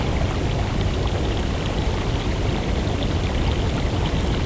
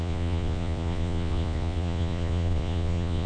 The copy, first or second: second